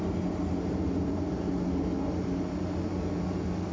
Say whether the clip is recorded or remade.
recorded